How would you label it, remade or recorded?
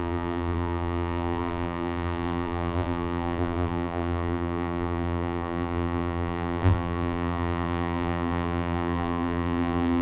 remade